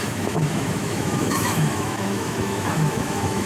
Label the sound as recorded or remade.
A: remade